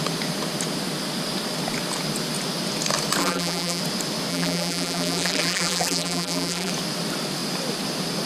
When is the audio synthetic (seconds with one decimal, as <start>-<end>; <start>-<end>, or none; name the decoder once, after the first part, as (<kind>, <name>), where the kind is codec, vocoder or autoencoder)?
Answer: 3.2-3.8 (vocoder, BigVGAN v2); 4.3-6.7